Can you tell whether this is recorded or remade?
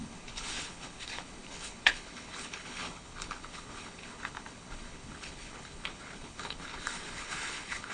remade